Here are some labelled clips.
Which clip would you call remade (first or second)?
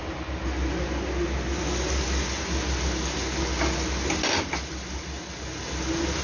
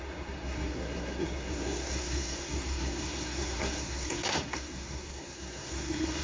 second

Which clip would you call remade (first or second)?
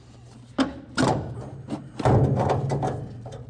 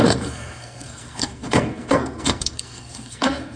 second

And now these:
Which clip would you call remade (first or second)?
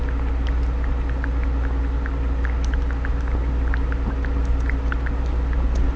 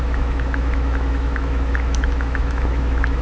second